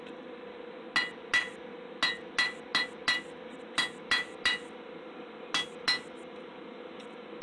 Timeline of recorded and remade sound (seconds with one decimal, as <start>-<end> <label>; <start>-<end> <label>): 0.0-7.4 recorded